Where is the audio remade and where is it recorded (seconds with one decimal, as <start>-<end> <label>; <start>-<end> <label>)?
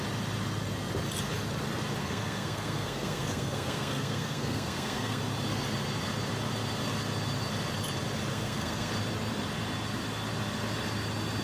0.0-2.0 recorded; 2.0-5.2 remade; 5.2-8.3 recorded; 8.3-8.9 remade; 8.9-11.4 recorded